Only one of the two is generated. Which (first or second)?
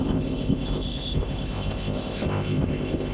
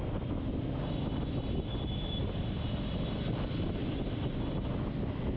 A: first